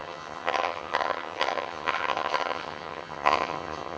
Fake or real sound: fake